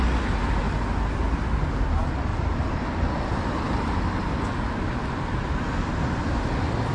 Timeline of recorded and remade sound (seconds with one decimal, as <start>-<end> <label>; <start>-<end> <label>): 0.0-6.9 recorded